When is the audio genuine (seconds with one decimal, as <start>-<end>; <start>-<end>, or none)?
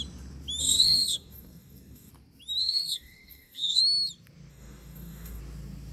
0.0-0.6; 2.1-2.6; 3.8-4.5; 5.4-5.9